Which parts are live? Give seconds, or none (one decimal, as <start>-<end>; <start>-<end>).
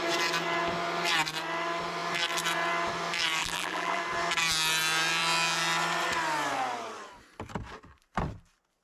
0.0-3.4; 4.0-8.8